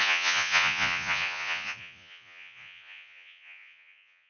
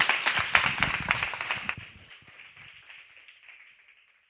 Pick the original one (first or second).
second